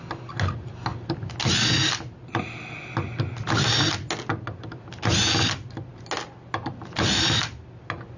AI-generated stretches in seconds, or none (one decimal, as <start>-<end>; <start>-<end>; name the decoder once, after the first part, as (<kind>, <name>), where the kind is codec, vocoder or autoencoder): none